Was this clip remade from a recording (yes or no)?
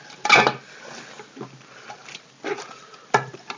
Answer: no